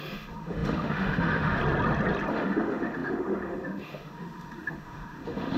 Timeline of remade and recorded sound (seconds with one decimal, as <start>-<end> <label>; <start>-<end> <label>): 0.0-1.6 remade; 1.6-2.3 recorded; 2.3-5.6 remade